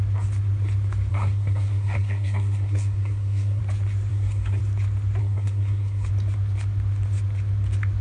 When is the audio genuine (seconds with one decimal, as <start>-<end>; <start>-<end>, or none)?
0.0-1.1; 3.6-4.1; 4.6-5.2; 6.1-8.0